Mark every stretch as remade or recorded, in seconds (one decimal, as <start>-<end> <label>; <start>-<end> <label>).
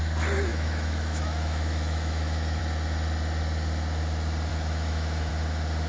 0.0-0.5 recorded; 0.5-2.6 remade; 2.6-4.5 recorded; 4.5-5.3 remade; 5.3-5.9 recorded